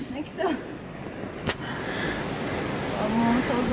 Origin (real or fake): real